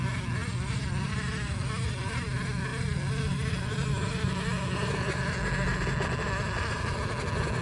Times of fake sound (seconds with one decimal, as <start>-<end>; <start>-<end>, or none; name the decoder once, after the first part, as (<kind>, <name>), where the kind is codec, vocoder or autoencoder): none